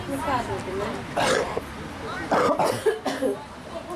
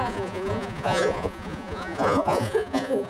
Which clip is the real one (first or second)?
first